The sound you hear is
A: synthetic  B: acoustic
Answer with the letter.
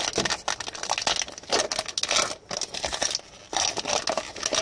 B